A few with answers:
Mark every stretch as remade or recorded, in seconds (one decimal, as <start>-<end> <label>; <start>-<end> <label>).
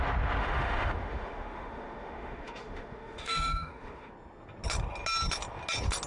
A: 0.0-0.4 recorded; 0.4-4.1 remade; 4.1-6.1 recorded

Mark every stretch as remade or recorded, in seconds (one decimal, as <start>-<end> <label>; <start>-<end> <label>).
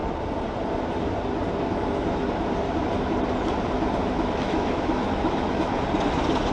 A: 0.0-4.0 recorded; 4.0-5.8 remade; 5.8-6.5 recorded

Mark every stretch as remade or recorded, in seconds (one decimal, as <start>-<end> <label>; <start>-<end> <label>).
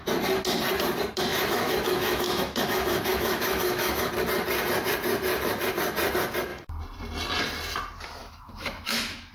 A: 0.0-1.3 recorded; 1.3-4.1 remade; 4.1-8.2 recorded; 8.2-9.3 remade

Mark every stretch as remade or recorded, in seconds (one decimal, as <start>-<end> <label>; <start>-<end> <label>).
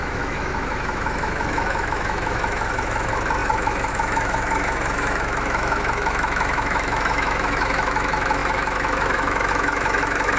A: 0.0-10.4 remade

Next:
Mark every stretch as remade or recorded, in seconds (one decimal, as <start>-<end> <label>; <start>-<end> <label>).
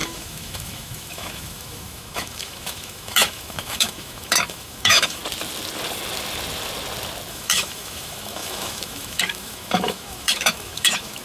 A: 0.0-5.2 remade; 5.2-7.3 recorded; 7.3-11.2 remade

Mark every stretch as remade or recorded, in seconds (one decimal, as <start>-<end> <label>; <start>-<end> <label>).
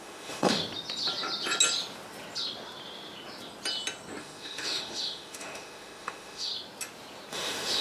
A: 0.0-0.6 remade; 0.6-4.2 recorded; 4.2-6.5 remade; 6.5-7.3 recorded; 7.3-7.8 remade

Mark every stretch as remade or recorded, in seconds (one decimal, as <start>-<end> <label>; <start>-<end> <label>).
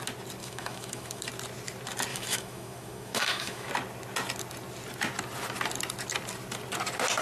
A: 0.0-0.4 recorded; 0.4-1.2 remade; 1.2-2.1 recorded; 2.1-3.7 remade; 3.7-7.2 recorded